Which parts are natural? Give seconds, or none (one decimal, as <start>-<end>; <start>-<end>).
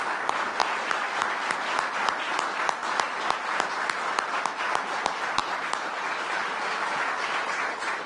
0.0-5.4; 6.1-8.1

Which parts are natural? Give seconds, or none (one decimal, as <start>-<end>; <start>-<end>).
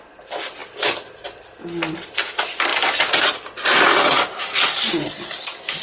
0.0-5.8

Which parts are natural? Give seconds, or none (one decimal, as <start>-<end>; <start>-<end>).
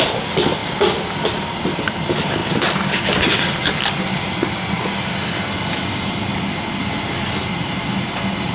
0.0-0.6; 2.0-2.4; 3.0-8.5